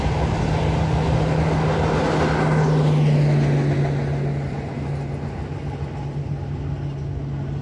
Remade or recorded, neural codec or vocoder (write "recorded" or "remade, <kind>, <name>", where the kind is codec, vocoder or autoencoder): recorded